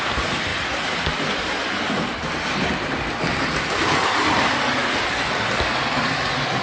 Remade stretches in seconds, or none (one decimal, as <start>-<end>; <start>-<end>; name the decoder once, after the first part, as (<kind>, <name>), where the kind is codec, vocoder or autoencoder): none